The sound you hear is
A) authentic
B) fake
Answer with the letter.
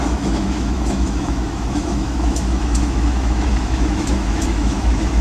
B